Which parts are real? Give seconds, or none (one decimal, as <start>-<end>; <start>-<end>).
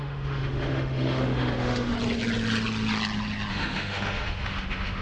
1.9-3.5